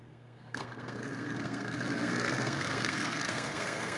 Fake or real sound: fake